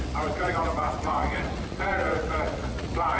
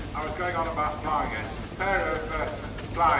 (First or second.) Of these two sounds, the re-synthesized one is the first